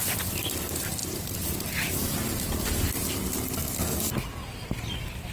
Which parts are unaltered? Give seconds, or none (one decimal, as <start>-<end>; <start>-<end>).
0.0-5.3